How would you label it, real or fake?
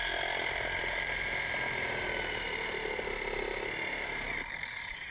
real